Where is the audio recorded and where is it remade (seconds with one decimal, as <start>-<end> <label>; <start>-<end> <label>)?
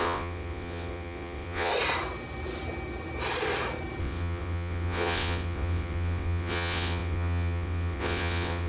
0.0-1.7 remade; 1.7-4.0 recorded; 4.0-8.7 remade